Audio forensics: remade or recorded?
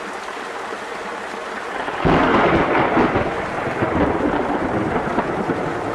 recorded